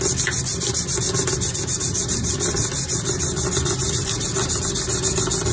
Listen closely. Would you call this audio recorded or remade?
recorded